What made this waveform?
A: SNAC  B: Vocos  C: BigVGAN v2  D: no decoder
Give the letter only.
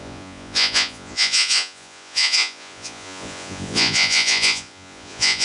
B